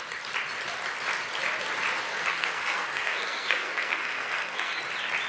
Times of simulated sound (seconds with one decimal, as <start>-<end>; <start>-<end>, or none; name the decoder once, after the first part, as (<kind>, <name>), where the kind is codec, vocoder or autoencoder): 2.1-4.8 (codec, SNAC)